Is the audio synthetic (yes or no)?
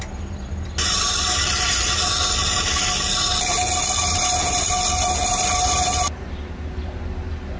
no